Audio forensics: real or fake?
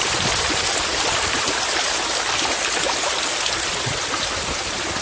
real